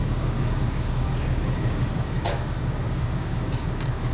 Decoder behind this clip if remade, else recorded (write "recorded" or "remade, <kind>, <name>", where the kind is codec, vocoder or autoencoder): remade, codec, DAC